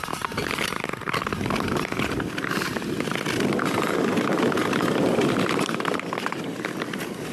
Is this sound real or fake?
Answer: real